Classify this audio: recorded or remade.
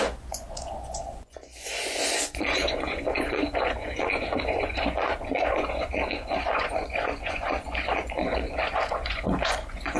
remade